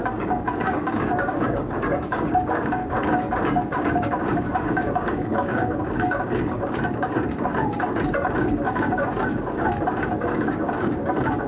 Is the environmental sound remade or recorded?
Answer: remade